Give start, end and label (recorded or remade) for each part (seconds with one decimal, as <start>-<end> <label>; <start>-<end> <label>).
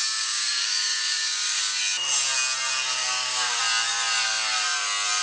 0.0-1.8 remade; 1.8-3.0 recorded; 3.0-3.6 remade; 3.6-5.2 recorded